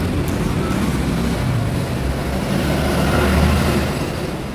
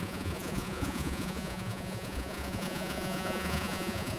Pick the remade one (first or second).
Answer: second